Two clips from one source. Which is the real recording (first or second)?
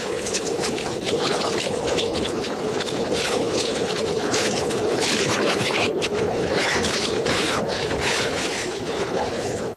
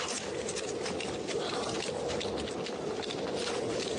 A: second